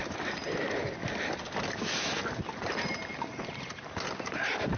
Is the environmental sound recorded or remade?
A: recorded